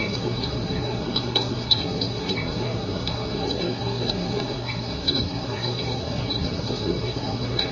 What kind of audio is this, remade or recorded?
remade